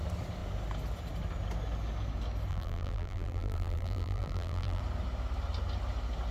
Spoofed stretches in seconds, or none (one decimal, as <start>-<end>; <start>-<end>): 2.5-4.8